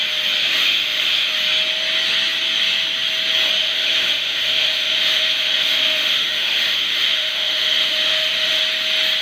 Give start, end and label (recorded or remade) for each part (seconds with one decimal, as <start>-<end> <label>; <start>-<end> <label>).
0.0-0.4 recorded; 0.4-1.3 remade; 1.3-3.6 recorded; 3.6-8.6 remade; 8.6-9.2 recorded